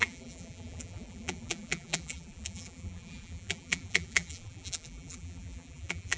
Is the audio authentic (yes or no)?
no